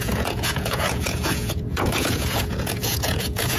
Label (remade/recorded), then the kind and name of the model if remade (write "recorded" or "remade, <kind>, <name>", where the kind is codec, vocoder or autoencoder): remade, vocoder, Vocos